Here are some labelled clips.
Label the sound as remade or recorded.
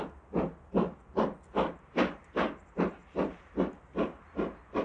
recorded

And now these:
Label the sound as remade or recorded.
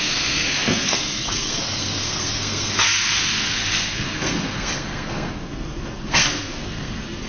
remade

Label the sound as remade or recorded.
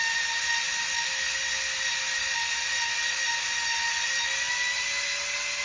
recorded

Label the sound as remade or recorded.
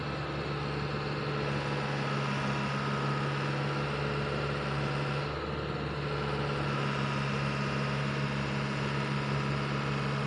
recorded